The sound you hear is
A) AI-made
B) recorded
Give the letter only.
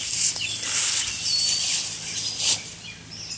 B